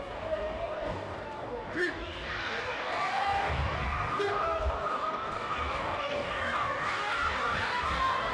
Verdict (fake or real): fake